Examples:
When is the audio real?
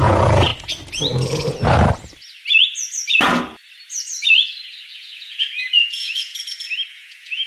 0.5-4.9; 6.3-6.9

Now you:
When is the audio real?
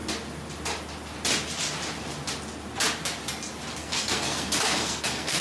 0.0-3.8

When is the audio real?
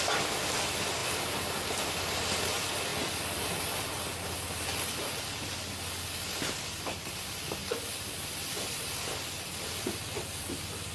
0.0-7.6; 9.7-10.9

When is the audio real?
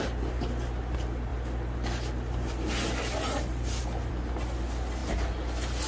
0.0-5.9